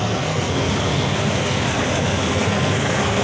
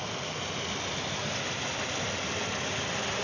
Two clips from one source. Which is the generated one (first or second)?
first